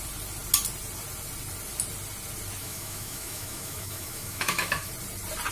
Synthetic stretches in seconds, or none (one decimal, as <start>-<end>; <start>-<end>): 2.6-4.9